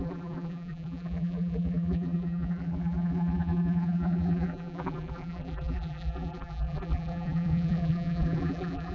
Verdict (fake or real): fake